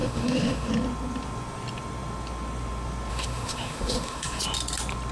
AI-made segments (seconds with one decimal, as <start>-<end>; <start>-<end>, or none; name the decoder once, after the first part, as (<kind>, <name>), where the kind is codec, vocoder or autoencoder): 0.0-0.7 (autoencoder, DAC-VAE); 3.1-4.4